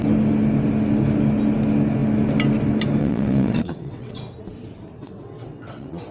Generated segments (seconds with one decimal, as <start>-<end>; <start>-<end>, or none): 3.0-4.2; 5.0-6.1